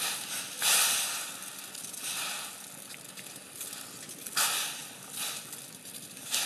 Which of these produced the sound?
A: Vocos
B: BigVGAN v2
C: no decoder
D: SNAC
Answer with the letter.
C